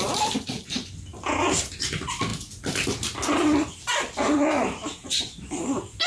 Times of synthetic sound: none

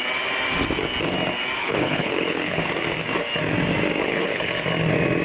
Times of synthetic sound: 1.6-2.6 (codec, HILCodec); 4.0-4.5

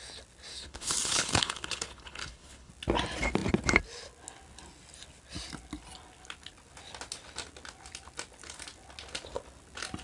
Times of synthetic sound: 0.5-2.7 (codec, HILCodec)

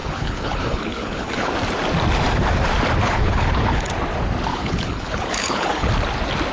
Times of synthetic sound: 0.0-1.5 (codec, HILCodec); 3.0-3.9; 4.5-5.9

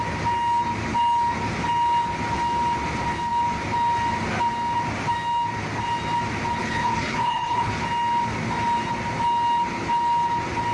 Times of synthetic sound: 6.6-7.7 (codec, HILCodec)

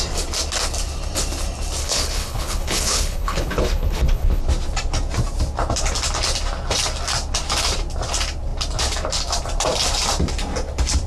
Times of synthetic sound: 1.8-4.4 (codec, HILCodec)

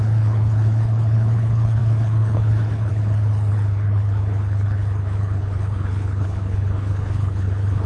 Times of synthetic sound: 0.0-7.9 (codec, HILCodec)

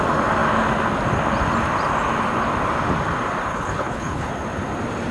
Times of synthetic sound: 3.5-4.3 (codec, HILCodec)